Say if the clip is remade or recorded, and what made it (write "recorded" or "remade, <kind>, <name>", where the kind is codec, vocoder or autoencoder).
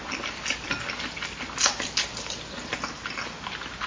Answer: recorded